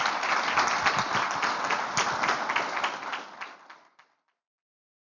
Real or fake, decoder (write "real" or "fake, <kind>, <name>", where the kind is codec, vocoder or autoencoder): real